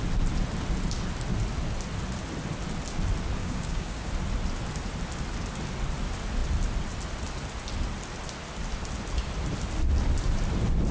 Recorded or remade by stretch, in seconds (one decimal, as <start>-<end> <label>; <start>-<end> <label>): 0.0-3.4 recorded; 3.4-4.1 remade; 4.1-10.9 recorded